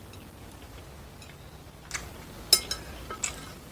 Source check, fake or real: real